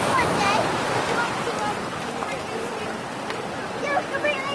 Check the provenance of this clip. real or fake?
fake